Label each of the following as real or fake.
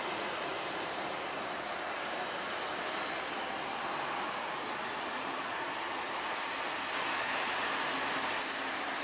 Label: real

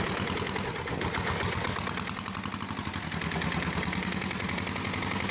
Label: real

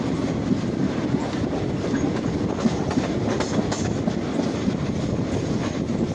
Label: real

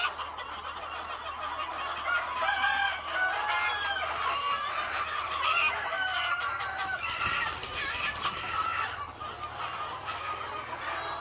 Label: real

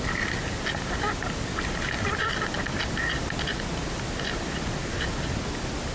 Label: real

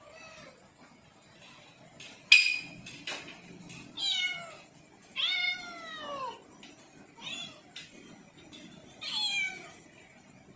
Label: real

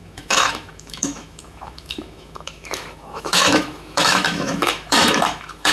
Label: fake